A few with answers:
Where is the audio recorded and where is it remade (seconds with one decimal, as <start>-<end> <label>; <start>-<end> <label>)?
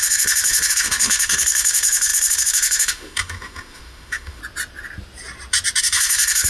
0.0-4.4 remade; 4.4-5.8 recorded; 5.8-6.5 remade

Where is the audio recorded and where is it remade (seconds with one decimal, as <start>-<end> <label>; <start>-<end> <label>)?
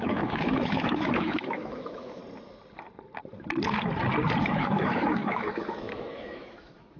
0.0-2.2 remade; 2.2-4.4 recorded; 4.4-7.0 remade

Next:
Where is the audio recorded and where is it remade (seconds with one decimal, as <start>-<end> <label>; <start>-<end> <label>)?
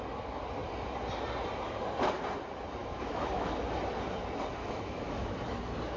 0.0-2.8 recorded; 2.8-3.6 remade; 3.6-4.6 recorded; 4.6-5.6 remade; 5.6-6.0 recorded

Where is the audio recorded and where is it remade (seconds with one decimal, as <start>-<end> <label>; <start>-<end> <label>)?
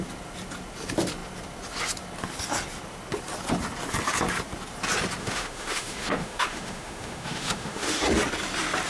0.0-5.2 recorded; 5.2-8.0 remade; 8.0-8.9 recorded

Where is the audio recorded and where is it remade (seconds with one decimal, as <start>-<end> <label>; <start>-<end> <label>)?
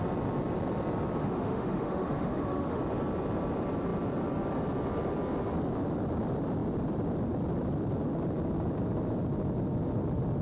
0.0-1.2 recorded; 1.2-2.8 remade; 2.8-10.4 recorded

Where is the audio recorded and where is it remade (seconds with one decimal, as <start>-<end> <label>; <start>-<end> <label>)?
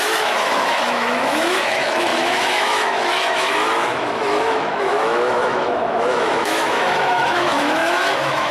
0.0-8.5 remade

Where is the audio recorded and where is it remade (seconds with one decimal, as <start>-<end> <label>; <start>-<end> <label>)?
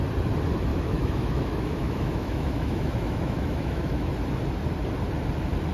0.0-0.7 recorded; 0.7-4.1 remade; 4.1-5.7 recorded